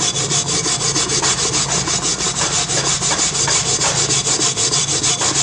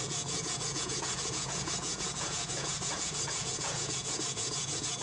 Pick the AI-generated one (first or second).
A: second